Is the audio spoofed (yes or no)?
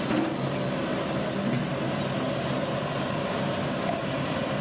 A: no